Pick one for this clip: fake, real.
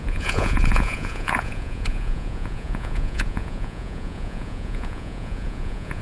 fake